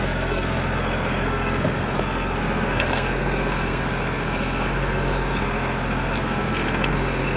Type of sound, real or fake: fake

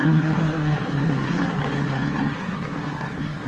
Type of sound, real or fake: fake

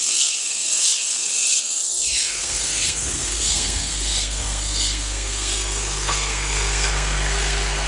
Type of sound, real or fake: fake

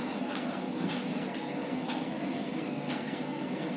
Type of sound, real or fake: fake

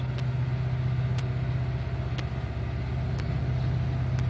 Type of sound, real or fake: real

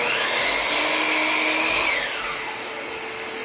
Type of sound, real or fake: real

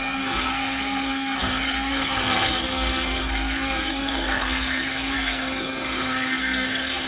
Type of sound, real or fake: fake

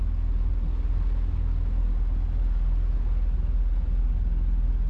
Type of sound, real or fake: real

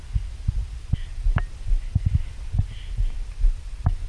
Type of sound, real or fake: real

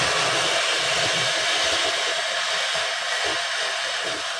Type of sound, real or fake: real